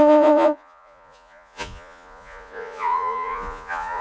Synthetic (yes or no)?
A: yes